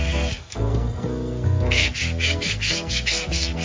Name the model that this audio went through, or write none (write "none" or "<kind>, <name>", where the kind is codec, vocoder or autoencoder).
codec, SNAC